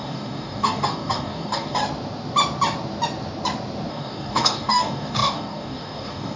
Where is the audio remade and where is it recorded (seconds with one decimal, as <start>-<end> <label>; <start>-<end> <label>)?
0.0-1.8 remade; 1.8-3.9 recorded; 3.9-6.4 remade